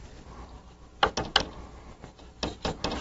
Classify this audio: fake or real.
real